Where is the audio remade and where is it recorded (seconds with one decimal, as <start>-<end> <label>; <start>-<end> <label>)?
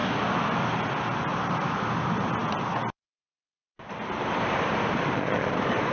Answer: 0.0-5.9 recorded